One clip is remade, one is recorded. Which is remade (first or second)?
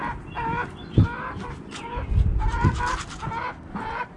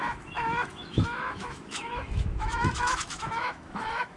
second